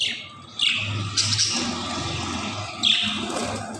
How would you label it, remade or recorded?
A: recorded